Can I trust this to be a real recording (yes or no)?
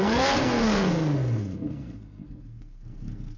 no